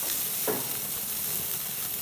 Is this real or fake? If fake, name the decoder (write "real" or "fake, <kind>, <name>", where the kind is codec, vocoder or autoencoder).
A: real